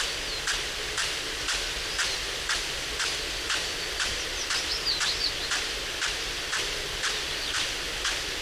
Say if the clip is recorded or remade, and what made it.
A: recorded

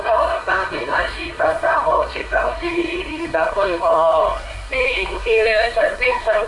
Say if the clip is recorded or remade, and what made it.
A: remade, codec, SNAC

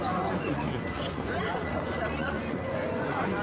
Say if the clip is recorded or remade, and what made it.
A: remade, vocoder, Vocos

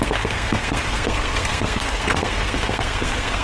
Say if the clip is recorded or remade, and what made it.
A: remade, codec, SNAC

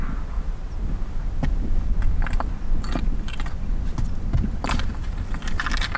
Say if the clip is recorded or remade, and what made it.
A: recorded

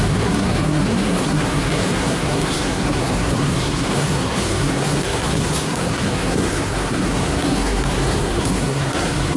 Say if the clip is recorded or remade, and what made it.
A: remade, codec, SNAC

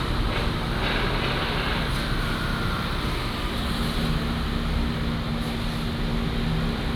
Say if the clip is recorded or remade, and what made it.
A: recorded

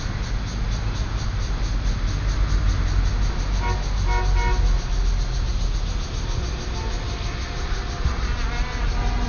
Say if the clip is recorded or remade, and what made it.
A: recorded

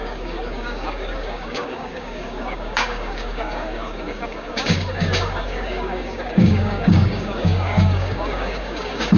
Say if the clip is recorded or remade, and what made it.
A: remade, codec, DAC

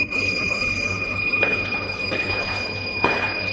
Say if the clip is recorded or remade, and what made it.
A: remade, codec, HILCodec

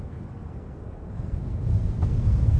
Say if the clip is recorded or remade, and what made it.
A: remade, codec, SNAC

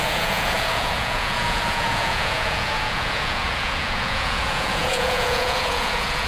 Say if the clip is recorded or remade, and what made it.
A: remade, vocoder, Vocos